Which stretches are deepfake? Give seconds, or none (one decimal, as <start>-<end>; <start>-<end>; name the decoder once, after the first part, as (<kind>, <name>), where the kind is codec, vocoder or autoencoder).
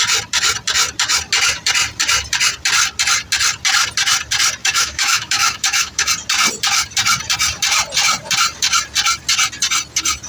4.6-6.1 (autoencoder, DAC-VAE)